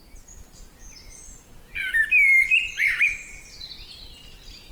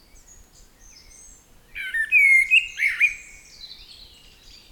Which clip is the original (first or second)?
second